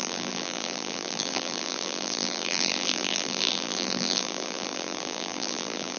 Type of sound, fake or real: fake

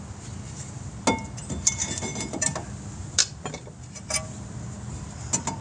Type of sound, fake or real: real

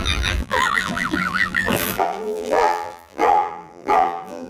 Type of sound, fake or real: fake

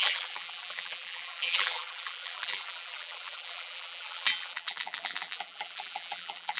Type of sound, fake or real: fake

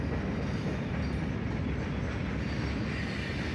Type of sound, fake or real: real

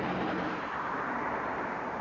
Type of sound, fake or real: fake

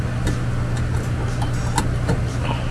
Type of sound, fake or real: real